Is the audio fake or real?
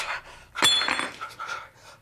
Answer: real